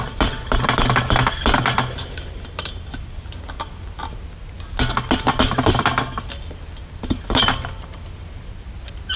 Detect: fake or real real